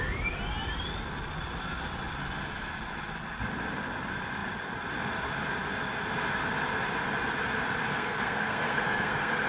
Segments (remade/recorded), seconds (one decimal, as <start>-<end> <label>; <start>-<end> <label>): 0.0-7.9 recorded; 7.9-9.5 remade